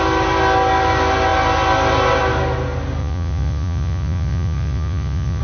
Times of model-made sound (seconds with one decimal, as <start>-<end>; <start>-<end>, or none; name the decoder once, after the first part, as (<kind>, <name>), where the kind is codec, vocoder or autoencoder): 3.0-5.4 (vocoder, Vocos)